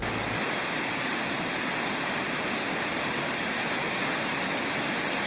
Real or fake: real